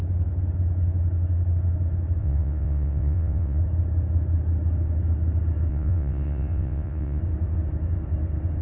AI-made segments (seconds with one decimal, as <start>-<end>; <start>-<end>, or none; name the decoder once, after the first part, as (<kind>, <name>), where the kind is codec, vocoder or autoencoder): 2.2-3.6 (vocoder, WaveNeXt); 5.7-7.2